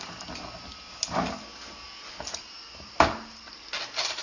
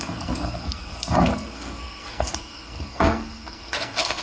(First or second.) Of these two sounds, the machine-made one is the second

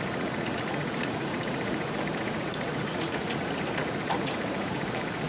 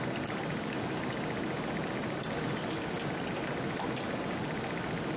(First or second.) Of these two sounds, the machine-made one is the first